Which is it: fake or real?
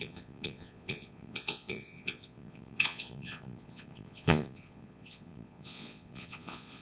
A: fake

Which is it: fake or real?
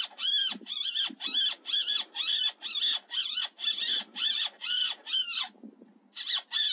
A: real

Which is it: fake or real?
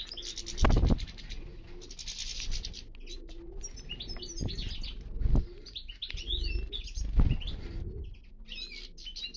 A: real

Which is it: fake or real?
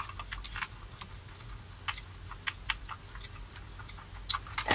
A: real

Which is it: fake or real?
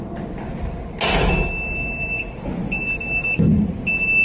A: real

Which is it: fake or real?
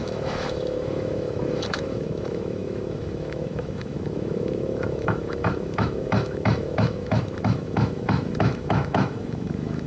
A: fake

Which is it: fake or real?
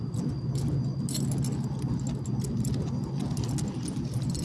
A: real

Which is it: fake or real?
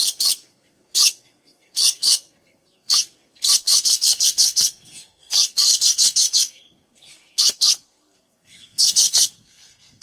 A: fake